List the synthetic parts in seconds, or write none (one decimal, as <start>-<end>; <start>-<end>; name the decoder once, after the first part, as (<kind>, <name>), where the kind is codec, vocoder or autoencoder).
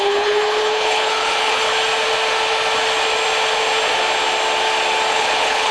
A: 0.0-1.7 (codec, HILCodec); 5.1-5.7